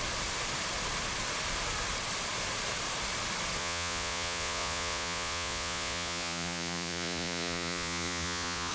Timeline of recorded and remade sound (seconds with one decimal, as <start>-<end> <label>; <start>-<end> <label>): 0.0-3.6 recorded; 3.6-8.7 remade